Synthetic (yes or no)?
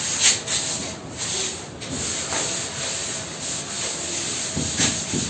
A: no